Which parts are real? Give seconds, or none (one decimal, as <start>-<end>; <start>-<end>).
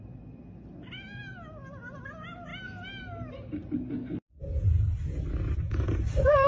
0.0-6.5